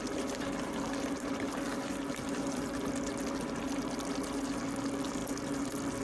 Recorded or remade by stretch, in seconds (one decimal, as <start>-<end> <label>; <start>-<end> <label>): 0.0-6.0 recorded